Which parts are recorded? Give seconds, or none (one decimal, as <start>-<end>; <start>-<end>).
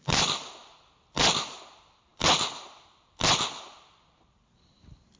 0.0-5.2